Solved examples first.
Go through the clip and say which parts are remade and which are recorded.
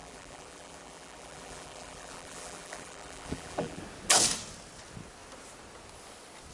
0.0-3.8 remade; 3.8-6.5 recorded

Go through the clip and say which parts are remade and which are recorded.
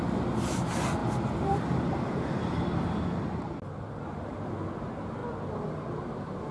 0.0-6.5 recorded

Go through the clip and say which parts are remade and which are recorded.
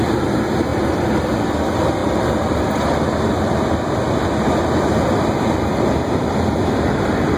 0.0-7.4 remade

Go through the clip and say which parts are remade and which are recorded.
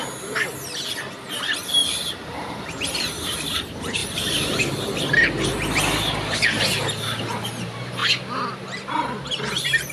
0.0-1.8 recorded; 1.8-3.6 remade; 3.6-4.0 recorded; 4.0-4.6 remade; 4.6-9.9 recorded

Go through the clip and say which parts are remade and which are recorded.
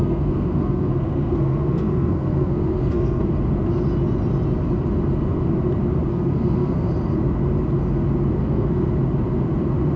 0.0-3.3 remade; 3.3-6.1 recorded; 6.1-6.9 remade; 6.9-8.4 recorded; 8.4-8.9 remade; 8.9-10.0 recorded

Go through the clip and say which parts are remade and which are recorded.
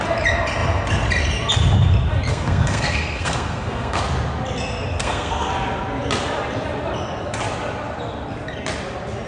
0.0-2.3 recorded; 2.3-4.0 remade; 4.0-5.0 recorded; 5.0-5.5 remade; 5.5-9.3 recorded